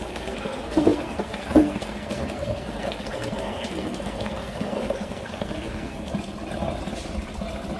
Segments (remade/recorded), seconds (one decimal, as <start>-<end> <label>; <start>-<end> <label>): 0.0-6.1 remade; 6.1-7.8 recorded